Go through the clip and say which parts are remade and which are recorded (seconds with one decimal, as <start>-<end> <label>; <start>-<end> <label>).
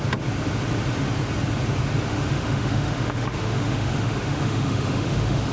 0.0-2.1 recorded; 2.1-5.5 remade